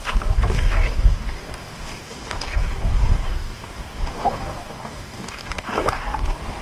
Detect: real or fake fake